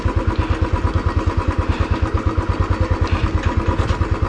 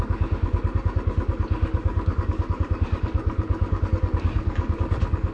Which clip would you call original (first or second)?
first